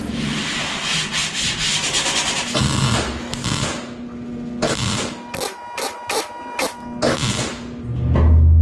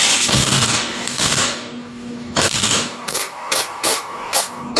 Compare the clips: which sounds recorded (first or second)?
first